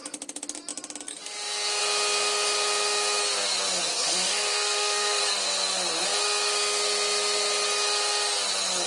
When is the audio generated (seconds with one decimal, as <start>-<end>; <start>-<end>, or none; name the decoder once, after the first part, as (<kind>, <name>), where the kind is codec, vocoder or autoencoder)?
3.9-5.2 (codec, SNAC)